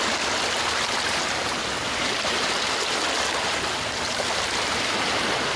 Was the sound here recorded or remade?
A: recorded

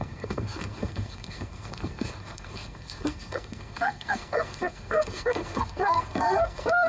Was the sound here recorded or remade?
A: remade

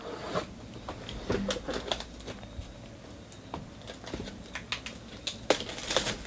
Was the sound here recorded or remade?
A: recorded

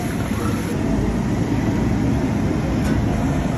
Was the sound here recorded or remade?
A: recorded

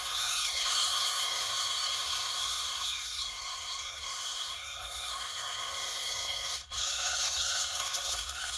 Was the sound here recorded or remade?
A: remade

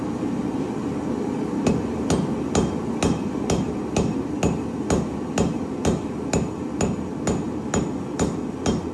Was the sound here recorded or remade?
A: recorded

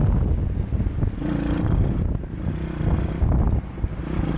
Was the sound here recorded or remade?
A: recorded